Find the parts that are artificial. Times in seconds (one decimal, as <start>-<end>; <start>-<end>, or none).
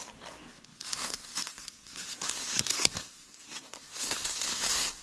0.0-5.0